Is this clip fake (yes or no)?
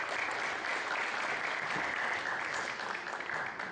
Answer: no